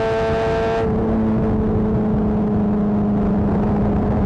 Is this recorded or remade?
recorded